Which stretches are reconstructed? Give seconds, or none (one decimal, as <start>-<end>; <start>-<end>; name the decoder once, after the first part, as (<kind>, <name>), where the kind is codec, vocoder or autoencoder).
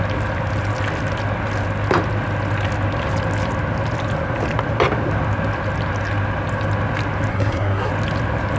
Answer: 7.3-7.9 (codec, SNAC)